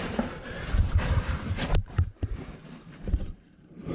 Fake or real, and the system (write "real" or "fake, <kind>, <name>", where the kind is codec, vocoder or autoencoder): fake, vocoder, BigVGAN v2